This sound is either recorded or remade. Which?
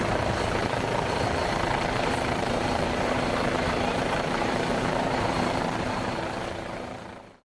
remade